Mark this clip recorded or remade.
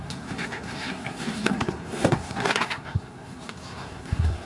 remade